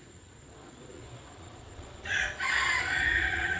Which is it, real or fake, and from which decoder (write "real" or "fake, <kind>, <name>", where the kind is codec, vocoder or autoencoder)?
fake, vocoder, Vocos